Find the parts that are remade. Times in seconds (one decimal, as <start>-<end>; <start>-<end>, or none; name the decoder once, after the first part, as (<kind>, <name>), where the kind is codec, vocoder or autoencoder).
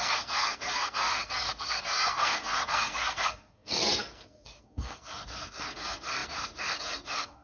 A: 0.0-7.4 (codec, SNAC)